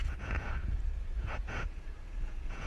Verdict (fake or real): fake